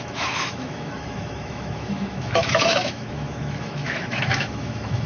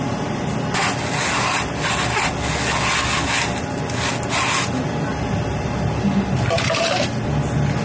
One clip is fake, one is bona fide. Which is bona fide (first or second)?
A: second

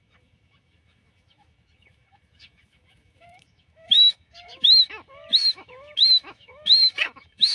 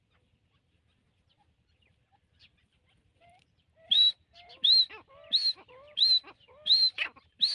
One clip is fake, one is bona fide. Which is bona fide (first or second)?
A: second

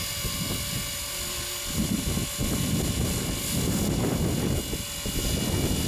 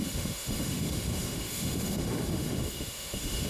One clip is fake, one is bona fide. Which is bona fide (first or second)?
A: first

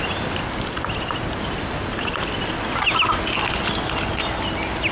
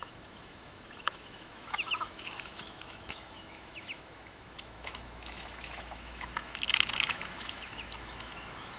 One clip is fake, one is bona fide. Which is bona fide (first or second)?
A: first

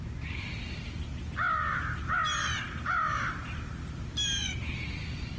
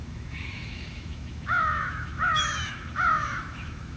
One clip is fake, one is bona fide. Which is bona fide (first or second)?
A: first